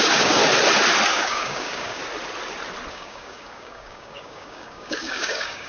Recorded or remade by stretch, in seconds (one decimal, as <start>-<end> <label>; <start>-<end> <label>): 0.0-0.4 remade; 0.4-1.1 recorded; 1.1-2.0 remade; 2.0-2.9 recorded; 2.9-5.7 remade